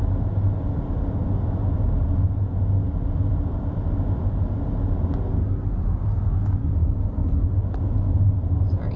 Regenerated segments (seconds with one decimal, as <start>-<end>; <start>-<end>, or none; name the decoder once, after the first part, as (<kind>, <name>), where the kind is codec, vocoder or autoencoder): none